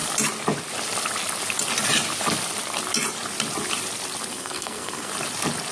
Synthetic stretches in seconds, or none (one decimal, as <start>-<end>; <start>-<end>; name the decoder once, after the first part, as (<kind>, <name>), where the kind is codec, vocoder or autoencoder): 4.3-5.1 (codec, SNAC)